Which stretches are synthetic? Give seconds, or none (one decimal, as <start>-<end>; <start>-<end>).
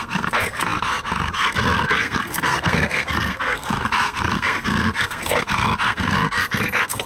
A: 0.0-7.1